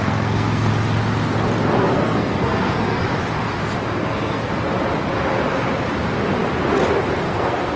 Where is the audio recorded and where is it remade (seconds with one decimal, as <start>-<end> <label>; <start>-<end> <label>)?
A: 0.0-0.7 remade; 0.7-1.8 recorded; 1.8-3.0 remade; 3.0-4.0 recorded; 4.0-4.5 remade; 4.5-7.2 recorded; 7.2-7.8 remade